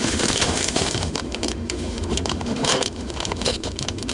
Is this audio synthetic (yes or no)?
yes